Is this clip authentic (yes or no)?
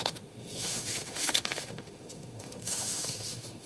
no